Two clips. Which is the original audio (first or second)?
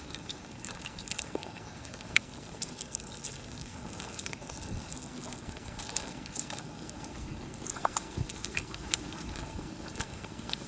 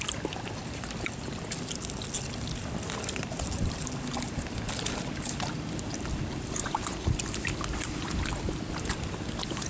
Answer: second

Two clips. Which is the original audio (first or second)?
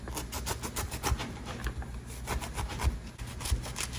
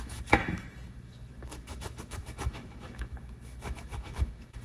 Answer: first